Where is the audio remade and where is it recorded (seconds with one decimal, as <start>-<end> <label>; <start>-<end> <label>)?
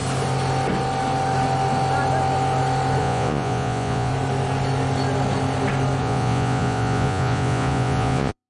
0.0-3.0 recorded; 3.0-4.1 remade; 4.1-6.0 recorded; 6.0-8.5 remade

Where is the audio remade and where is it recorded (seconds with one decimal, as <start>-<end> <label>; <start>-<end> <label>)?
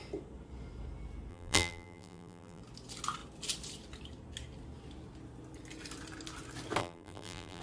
0.0-1.3 recorded; 1.3-2.6 remade; 2.6-6.8 recorded; 6.8-7.6 remade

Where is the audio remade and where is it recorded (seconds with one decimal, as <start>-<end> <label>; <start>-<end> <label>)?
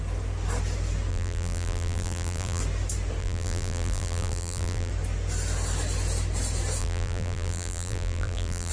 0.0-1.1 recorded; 1.1-2.6 remade; 2.6-3.2 recorded; 3.2-4.9 remade; 4.9-6.8 recorded; 6.8-8.7 remade